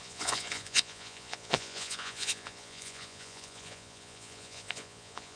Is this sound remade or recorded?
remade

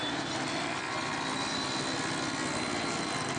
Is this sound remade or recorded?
recorded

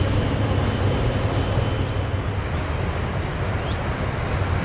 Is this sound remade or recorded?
recorded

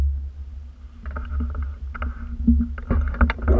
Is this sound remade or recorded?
recorded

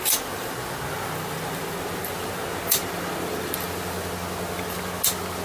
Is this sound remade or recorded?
recorded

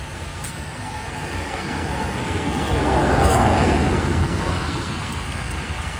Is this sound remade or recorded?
remade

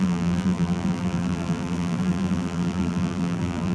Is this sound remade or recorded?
remade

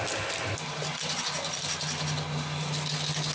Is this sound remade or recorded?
recorded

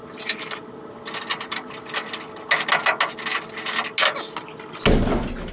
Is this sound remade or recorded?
recorded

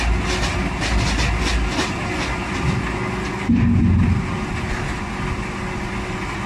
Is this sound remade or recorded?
recorded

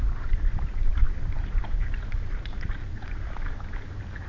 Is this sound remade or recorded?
remade